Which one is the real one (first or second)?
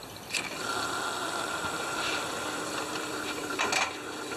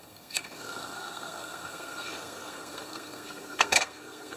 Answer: first